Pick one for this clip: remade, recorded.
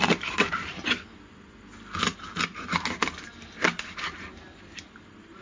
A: recorded